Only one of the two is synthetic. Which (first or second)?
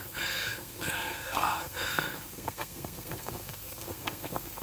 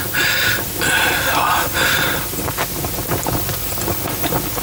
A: first